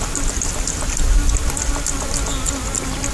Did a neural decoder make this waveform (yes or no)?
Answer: no